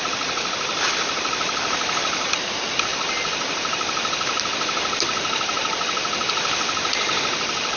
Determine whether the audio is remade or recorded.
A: recorded